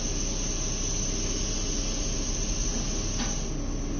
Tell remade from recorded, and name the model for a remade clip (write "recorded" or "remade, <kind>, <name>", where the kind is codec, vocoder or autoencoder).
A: recorded